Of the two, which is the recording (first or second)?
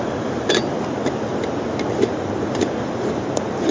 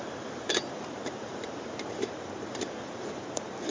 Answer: first